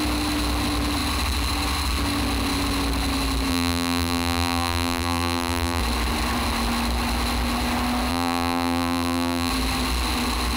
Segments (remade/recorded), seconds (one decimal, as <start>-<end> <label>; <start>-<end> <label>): 0.0-3.5 recorded; 3.5-5.8 remade; 5.8-8.1 recorded; 8.1-9.5 remade; 9.5-10.6 recorded

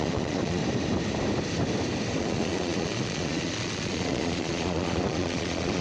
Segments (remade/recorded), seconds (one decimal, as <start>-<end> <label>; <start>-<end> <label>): 0.0-0.6 remade; 0.6-2.2 recorded; 2.2-5.8 remade

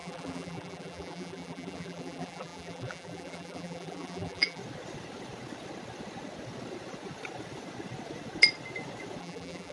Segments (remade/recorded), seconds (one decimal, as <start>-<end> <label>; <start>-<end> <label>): 0.0-4.6 remade; 4.6-9.2 recorded; 9.2-9.7 remade